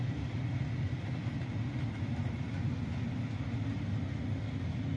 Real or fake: real